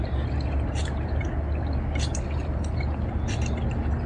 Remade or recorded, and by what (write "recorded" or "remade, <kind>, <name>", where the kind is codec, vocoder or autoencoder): recorded